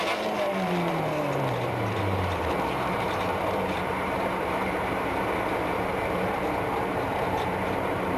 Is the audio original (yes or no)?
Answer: no